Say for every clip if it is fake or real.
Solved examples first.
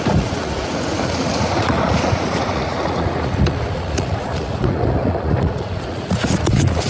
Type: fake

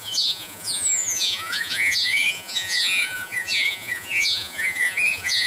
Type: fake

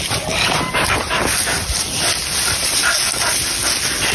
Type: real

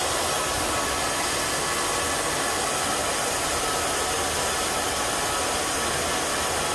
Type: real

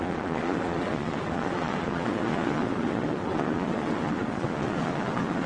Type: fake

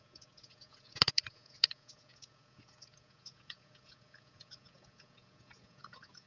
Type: fake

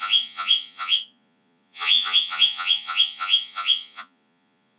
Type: fake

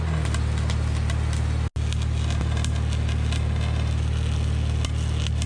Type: real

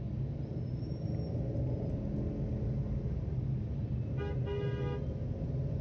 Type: real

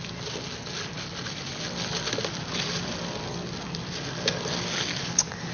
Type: real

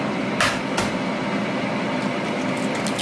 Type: real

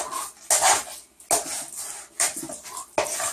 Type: real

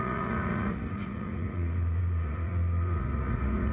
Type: fake